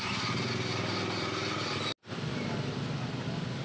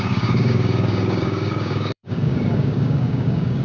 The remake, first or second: second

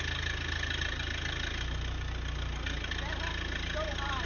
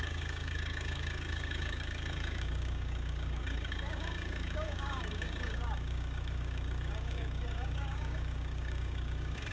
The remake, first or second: second